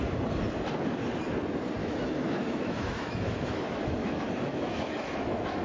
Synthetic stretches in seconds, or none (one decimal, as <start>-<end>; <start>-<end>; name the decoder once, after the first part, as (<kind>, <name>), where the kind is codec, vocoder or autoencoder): 1.8-5.6 (autoencoder, DAC-VAE)